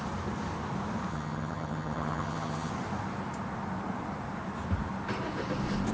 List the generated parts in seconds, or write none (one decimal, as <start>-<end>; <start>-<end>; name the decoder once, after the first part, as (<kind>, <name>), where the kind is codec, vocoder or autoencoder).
1.1-2.7 (vocoder, HiFi-GAN)